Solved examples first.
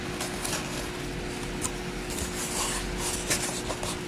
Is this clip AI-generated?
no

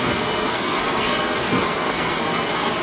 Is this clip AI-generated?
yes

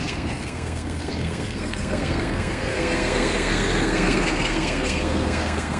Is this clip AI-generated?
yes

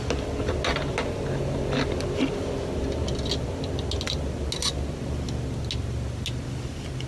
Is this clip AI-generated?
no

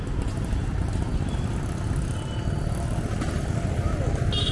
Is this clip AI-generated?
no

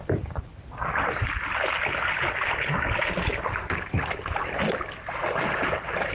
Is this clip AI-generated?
no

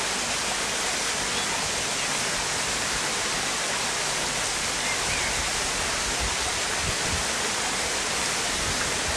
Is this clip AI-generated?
no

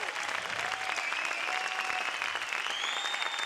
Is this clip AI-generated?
no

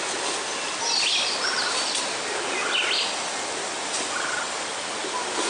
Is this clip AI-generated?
no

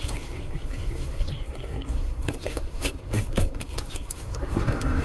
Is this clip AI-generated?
yes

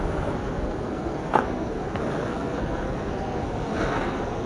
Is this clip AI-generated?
yes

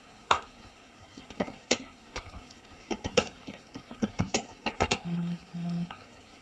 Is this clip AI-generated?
yes